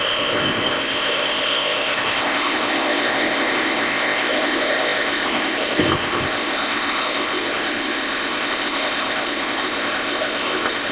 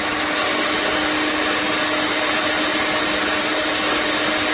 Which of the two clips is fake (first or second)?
first